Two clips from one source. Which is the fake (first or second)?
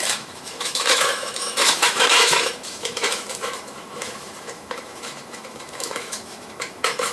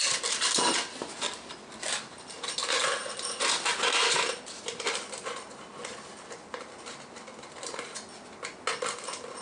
first